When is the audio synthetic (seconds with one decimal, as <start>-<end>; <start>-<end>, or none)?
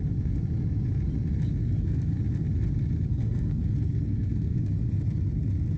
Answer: 1.6-2.2; 3.1-4.7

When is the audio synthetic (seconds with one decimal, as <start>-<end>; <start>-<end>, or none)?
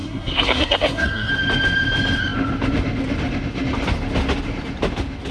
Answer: 0.0-1.3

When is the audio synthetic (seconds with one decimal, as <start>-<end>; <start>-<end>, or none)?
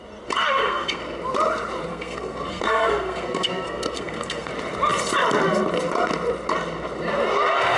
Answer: 0.4-1.0; 1.9-4.5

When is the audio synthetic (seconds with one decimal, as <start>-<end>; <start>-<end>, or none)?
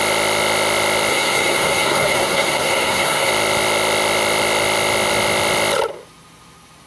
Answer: 1.1-3.3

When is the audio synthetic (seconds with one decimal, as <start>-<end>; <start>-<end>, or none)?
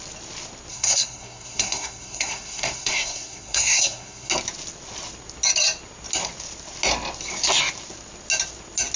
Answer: 0.7-4.3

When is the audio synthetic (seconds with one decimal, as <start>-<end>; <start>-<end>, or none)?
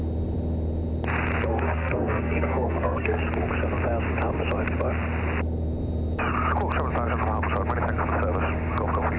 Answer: 1.5-3.2